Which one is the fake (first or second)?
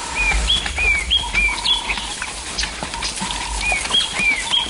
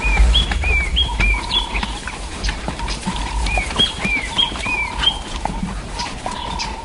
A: second